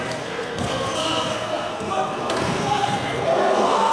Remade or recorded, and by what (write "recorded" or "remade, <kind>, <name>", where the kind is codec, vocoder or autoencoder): remade, codec, SNAC